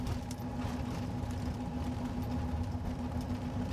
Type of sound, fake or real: real